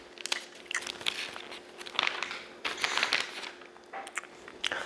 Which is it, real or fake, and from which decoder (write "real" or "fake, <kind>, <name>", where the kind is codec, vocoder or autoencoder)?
real